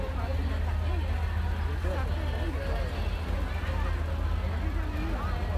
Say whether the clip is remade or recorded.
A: recorded